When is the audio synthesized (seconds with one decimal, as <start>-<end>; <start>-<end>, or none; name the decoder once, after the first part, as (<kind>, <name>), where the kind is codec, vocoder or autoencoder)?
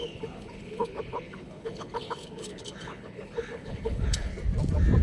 0.0-4.3 (codec, HILCodec)